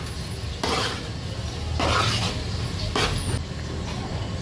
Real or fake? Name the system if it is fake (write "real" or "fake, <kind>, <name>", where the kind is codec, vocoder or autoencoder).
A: real